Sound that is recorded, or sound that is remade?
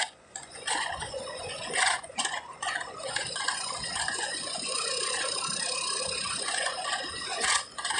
remade